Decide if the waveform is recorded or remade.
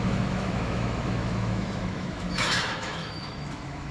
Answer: remade